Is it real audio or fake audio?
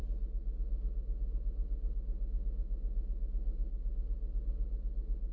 real